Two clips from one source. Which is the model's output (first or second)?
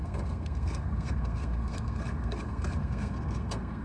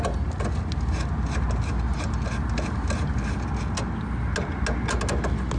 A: first